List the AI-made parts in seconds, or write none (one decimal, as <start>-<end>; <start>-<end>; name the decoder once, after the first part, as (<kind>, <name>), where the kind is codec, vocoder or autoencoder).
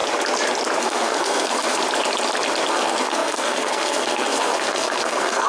0.8-1.8 (codec, SNAC); 2.7-5.5